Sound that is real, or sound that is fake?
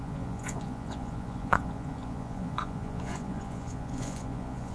fake